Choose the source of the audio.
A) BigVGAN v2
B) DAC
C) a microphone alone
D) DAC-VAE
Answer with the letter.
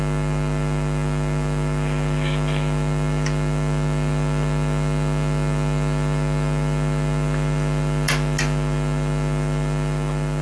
C